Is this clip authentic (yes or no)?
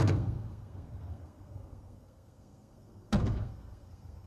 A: no